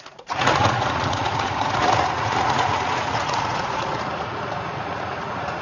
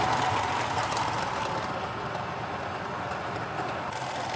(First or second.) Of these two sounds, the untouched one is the second